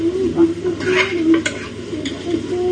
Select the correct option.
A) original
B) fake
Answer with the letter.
A